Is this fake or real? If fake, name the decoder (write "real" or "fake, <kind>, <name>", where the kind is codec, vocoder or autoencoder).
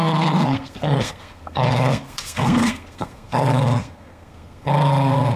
fake, codec, SNAC